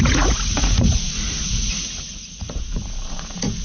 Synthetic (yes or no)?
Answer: yes